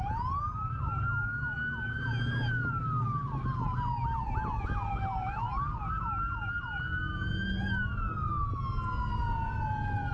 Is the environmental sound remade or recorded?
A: recorded